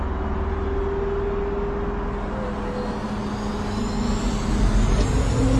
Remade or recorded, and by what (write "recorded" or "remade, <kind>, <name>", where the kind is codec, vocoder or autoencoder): recorded